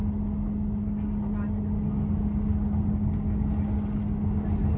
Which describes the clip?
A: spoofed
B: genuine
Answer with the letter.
B